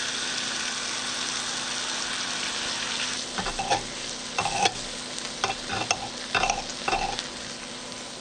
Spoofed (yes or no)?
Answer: no